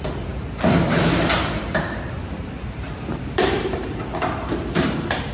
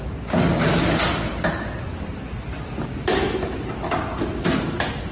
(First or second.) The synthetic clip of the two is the first